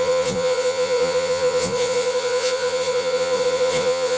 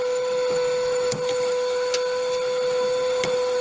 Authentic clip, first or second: second